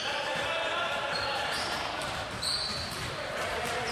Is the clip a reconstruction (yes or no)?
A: yes